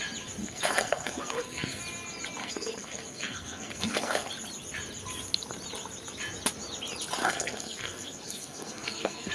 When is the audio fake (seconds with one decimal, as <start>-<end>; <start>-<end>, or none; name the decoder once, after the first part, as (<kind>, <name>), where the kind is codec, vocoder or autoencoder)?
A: 0.4-1.8 (codec, SNAC); 2.4-4.3; 7.2-9.3